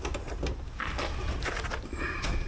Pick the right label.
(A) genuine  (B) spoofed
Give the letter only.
A